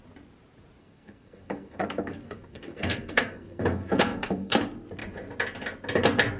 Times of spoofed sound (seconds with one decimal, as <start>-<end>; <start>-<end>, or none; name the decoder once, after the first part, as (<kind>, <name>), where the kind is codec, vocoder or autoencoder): 0.8-4.6 (codec, SNAC)